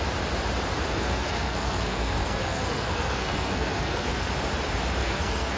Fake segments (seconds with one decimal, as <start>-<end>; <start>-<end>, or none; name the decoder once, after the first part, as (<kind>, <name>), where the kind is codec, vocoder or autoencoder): 0.9-4.3 (codec, SNAC); 5.0-5.6